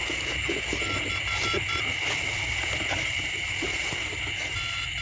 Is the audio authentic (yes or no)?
yes